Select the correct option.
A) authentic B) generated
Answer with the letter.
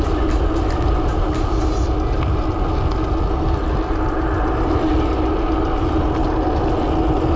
A